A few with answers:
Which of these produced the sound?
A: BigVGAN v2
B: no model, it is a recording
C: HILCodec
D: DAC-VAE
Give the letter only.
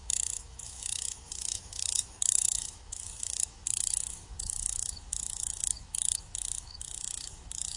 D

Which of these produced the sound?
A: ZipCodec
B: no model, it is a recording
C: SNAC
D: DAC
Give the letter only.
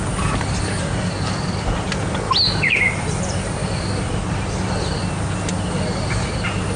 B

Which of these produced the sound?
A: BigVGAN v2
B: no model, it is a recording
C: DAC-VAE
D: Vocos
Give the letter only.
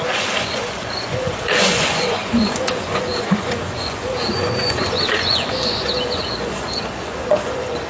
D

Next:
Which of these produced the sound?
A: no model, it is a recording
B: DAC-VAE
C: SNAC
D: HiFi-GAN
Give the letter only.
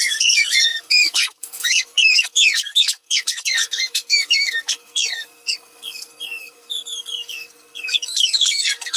C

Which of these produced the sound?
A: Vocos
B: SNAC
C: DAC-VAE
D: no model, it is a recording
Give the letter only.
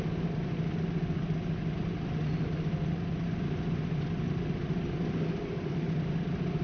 D